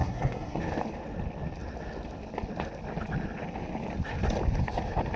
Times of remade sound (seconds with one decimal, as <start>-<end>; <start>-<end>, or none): 0.0-0.6